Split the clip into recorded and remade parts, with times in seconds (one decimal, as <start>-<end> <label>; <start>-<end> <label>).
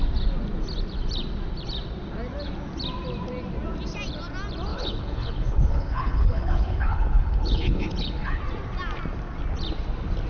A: 0.0-4.7 recorded; 4.7-8.4 remade; 8.4-10.3 recorded